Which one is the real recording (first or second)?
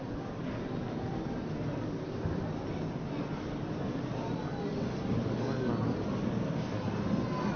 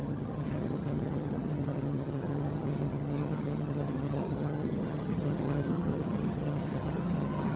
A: first